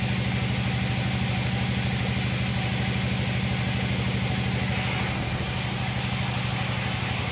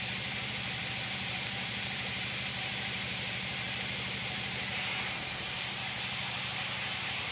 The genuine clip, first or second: first